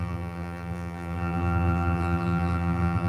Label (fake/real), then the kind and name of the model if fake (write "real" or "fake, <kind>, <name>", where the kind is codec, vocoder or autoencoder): fake, vocoder, BigVGAN v2